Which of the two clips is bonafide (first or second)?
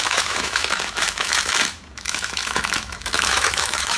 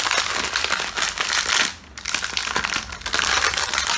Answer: second